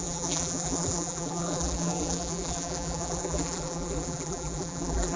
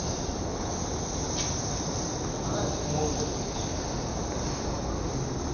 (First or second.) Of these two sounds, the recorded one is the second